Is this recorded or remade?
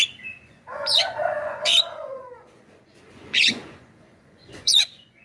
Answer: remade